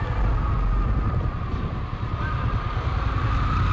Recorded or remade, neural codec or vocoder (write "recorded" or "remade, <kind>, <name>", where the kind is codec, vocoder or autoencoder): recorded